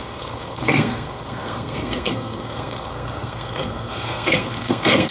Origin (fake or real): fake